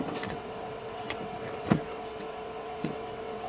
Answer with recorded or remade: remade